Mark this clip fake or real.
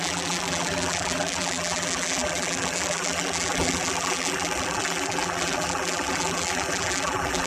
fake